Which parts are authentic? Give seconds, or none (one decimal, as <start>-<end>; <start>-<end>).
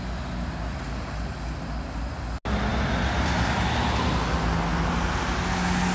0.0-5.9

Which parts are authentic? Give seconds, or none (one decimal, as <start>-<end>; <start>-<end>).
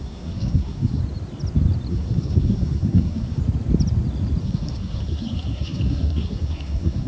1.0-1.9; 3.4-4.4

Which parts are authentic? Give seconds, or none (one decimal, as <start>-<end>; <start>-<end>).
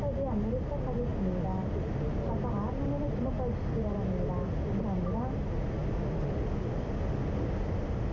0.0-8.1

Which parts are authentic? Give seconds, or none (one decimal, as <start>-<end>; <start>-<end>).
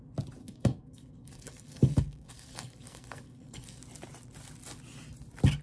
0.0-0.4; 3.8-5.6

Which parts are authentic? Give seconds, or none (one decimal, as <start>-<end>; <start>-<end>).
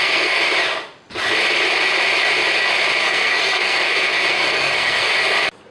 0.4-3.0; 5.1-5.7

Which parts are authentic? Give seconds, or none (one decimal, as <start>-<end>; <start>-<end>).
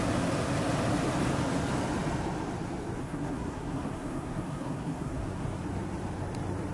0.0-3.0; 5.6-6.7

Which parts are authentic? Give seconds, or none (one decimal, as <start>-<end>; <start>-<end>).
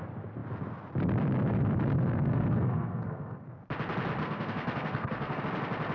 0.0-1.8; 3.4-4.2; 5.4-5.9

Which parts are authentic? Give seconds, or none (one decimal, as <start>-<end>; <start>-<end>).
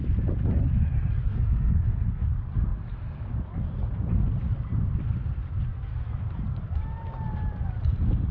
0.0-1.3; 2.3-8.3